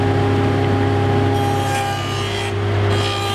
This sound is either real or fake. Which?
real